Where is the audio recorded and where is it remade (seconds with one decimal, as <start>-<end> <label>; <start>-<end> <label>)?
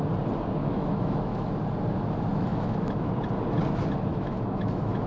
0.0-0.6 recorded; 0.6-1.5 remade; 1.5-2.3 recorded; 2.3-3.1 remade; 3.1-4.1 recorded; 4.1-5.1 remade